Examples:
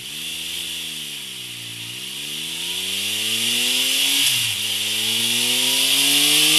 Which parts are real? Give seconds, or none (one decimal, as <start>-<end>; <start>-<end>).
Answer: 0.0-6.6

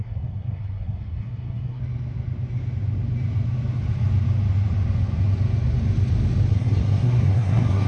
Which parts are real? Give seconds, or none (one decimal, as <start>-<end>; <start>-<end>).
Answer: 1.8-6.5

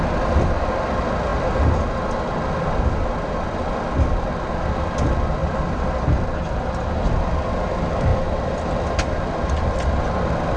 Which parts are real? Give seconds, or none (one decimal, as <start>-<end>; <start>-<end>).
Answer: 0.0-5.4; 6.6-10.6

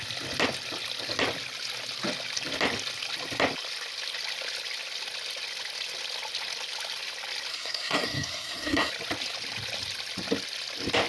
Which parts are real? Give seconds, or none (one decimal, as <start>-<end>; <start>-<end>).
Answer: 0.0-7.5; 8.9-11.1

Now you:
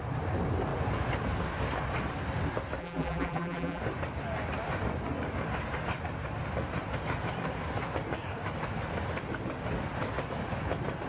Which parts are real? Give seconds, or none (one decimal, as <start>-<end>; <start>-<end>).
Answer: 0.0-2.8; 3.8-11.1

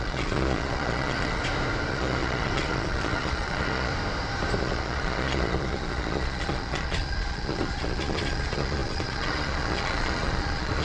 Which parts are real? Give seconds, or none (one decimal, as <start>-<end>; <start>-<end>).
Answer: 1.4-1.9; 3.9-4.6

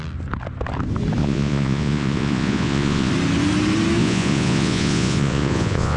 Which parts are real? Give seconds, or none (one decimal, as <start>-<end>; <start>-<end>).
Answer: 0.0-1.2; 3.1-4.0